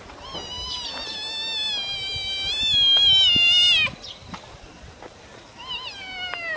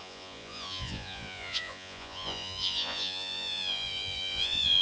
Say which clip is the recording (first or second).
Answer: first